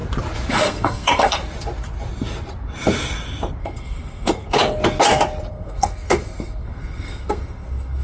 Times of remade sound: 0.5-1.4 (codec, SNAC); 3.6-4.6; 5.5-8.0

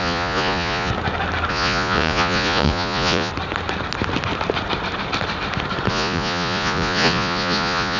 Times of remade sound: 0.0-0.9 (vocoder, Vocos); 1.5-3.3; 5.9-8.0

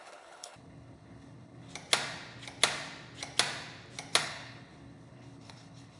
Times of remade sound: 0.0-1.7 (codec, HILCodec); 4.2-6.0